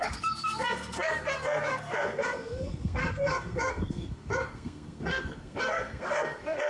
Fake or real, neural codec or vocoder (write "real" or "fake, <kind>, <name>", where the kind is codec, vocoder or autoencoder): fake, codec, SNAC